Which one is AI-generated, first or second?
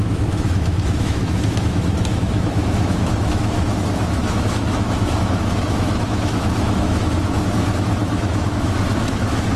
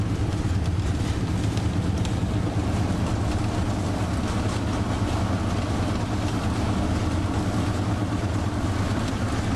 first